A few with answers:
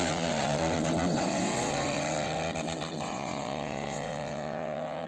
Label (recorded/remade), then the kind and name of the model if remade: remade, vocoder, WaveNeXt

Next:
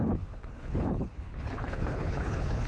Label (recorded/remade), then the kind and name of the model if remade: remade, codec, HILCodec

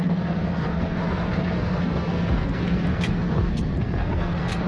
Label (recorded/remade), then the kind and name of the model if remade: remade, codec, SNAC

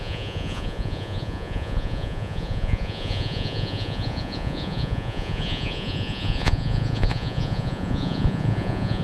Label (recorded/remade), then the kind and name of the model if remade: remade, vocoder, Vocos